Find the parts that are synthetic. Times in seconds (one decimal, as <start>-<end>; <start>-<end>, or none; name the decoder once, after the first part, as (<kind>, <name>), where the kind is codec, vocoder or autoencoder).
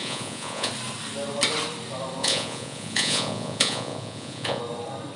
0.0-0.7 (vocoder, Vocos); 2.2-4.6